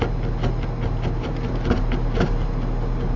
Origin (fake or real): real